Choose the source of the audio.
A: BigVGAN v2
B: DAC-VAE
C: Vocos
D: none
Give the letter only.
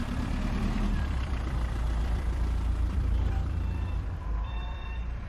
A